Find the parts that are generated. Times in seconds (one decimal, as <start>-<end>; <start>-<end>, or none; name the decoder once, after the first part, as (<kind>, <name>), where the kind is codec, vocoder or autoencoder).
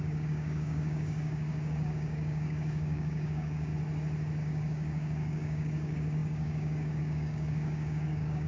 0.0-3.7 (codec, DAC); 4.4-8.5